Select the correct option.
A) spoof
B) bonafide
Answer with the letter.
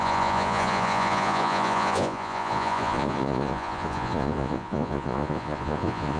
A